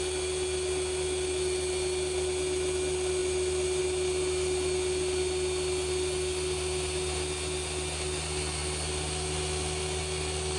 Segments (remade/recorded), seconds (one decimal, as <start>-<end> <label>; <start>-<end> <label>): 0.0-10.6 recorded